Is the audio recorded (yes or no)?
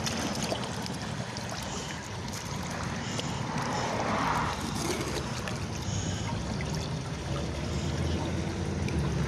yes